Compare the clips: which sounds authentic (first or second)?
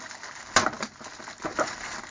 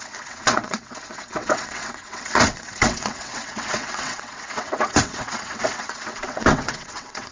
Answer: first